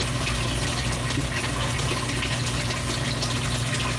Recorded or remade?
recorded